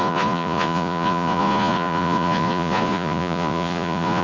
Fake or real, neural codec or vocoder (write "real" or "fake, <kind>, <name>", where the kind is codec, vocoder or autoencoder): fake, vocoder, Vocos